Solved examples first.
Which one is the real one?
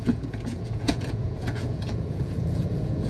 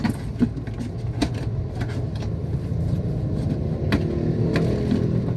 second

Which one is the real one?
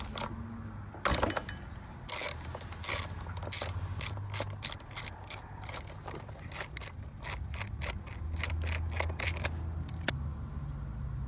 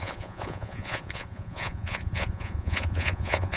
first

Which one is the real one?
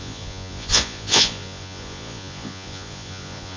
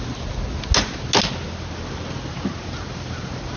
second